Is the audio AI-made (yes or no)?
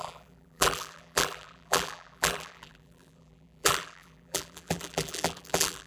yes